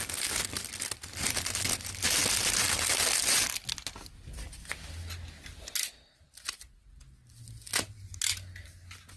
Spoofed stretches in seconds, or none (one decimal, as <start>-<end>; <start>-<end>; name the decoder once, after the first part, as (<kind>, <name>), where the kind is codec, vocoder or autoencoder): none

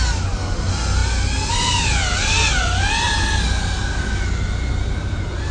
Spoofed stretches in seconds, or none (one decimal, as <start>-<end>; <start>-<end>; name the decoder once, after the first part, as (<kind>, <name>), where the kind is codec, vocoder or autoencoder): none

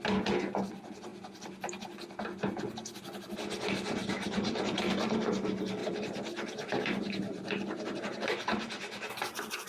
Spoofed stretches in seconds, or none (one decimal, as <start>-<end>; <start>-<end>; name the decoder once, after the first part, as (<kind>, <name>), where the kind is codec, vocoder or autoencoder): 4.0-4.6 (vocoder, BigVGAN v2); 5.8-9.7

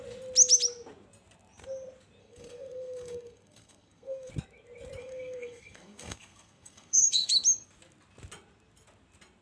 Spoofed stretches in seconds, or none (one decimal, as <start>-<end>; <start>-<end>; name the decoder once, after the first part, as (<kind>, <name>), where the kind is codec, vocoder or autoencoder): 2.2-4.3 (codec, SNAC); 5.0-7.3